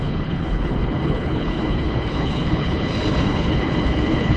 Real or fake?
fake